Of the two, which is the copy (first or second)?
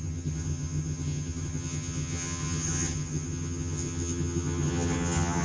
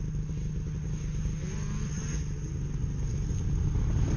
first